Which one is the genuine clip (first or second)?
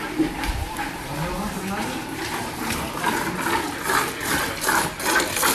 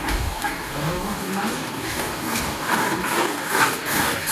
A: first